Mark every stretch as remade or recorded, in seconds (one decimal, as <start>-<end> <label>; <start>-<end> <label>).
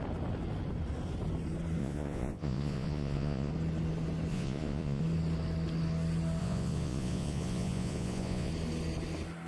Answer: 0.0-1.8 recorded; 1.8-3.5 remade; 3.5-4.3 recorded; 4.3-5.0 remade; 5.0-6.4 recorded; 6.4-8.5 remade; 8.5-9.5 recorded